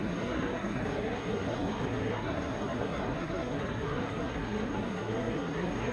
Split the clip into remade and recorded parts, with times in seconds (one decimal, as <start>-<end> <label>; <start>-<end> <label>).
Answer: 0.0-5.9 remade